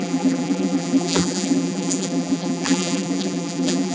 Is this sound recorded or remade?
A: remade